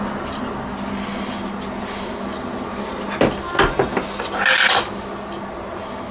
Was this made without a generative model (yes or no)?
yes